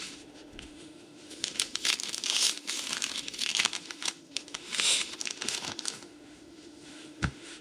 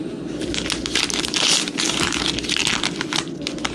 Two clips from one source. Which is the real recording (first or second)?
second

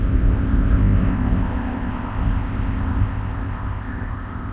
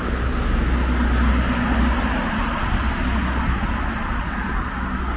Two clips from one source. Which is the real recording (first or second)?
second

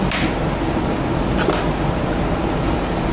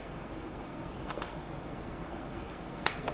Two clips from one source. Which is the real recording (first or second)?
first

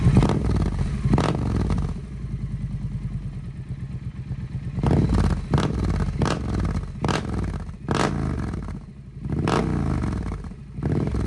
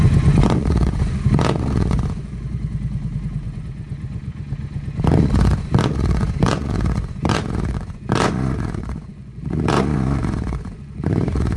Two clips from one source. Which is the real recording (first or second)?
first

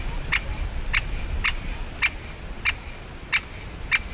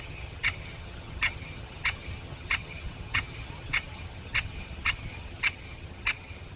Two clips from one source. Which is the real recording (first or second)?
first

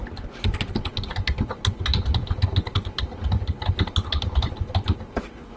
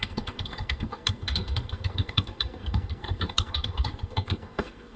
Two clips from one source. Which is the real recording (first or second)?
first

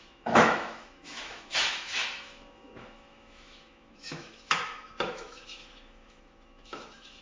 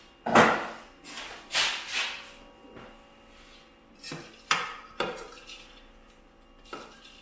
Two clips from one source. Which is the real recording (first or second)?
second